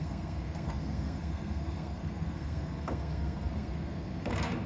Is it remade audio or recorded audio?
remade